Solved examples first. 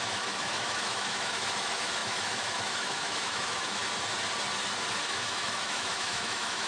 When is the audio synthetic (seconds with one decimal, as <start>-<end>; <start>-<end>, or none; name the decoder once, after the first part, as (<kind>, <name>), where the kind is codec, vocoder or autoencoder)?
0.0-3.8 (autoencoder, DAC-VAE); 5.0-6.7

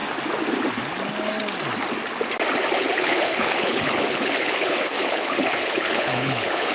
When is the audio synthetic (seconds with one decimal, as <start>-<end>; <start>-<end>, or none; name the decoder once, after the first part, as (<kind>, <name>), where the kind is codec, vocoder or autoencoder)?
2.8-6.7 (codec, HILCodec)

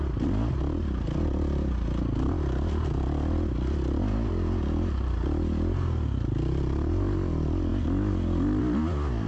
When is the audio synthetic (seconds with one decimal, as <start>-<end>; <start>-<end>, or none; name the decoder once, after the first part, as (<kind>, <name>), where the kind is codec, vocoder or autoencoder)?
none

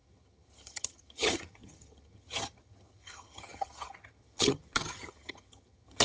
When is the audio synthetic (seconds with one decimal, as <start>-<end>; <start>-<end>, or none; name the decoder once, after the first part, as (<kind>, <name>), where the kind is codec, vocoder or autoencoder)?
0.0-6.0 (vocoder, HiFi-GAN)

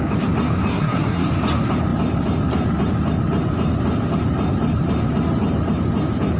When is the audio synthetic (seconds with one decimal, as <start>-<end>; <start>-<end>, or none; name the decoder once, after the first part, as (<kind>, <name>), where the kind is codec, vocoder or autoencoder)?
0.7-1.3 (codec, SNAC)

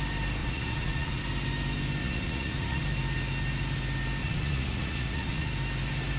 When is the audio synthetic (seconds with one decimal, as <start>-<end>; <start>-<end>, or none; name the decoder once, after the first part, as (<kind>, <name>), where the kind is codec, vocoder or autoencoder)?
0.4-1.2 (vocoder, Vocos); 2.0-2.8; 4.2-5.5

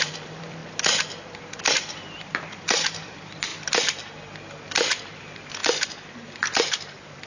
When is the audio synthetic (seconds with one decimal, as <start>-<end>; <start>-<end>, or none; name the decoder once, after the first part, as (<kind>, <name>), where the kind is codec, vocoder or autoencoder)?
0.0-0.6 (vocoder, BigVGAN v2); 1.7-3.5; 5.0-7.3